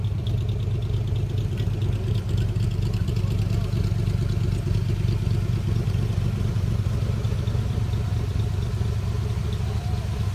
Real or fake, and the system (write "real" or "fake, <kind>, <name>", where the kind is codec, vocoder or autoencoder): real